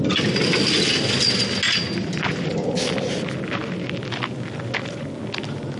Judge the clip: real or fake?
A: real